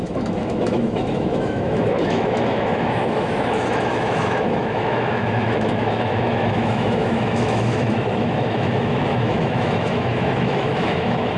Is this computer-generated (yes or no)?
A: yes